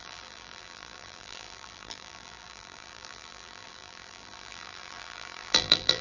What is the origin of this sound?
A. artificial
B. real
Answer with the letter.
A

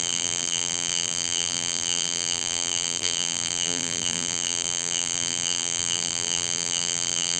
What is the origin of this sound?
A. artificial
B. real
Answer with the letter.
A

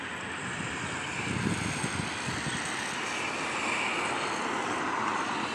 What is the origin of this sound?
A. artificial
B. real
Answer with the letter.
B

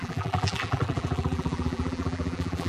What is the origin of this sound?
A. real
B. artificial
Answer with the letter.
B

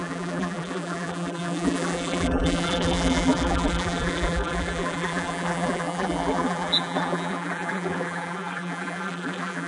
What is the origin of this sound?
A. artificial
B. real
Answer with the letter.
A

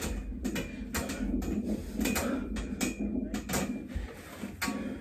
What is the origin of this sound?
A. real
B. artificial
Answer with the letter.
A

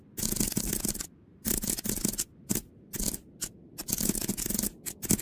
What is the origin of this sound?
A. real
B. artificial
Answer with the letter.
A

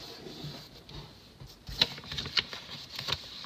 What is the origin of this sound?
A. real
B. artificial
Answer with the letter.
A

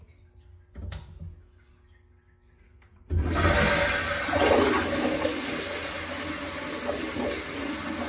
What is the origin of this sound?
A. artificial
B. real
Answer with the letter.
B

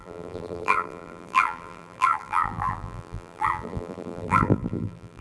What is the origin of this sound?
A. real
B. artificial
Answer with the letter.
B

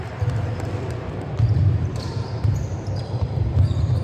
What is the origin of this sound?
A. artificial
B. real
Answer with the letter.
A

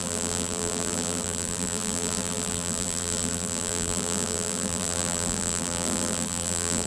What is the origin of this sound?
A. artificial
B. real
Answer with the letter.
A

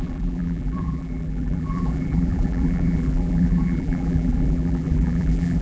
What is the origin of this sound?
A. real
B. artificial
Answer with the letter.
B